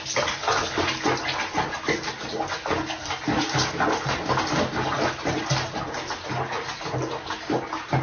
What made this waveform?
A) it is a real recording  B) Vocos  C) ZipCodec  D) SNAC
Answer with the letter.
A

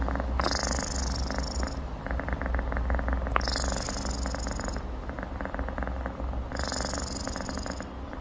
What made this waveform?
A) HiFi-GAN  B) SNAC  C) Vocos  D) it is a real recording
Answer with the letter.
D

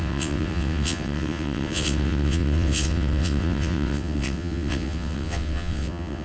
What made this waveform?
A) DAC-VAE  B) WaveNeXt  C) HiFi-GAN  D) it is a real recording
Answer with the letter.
B